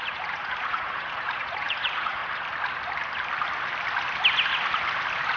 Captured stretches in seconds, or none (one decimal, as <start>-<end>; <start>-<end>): 2.2-5.4